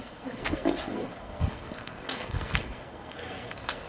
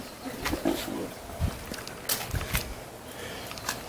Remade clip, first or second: first